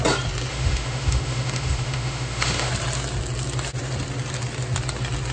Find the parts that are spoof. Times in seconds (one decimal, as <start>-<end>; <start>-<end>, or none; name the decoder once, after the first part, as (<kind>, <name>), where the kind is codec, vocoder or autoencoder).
0.5-2.7 (autoencoder, DAC-VAE)